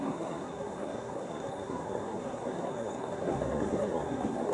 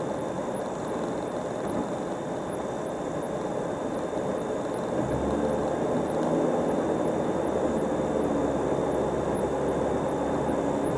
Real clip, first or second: second